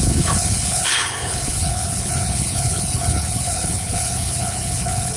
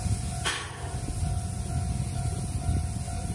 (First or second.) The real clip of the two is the second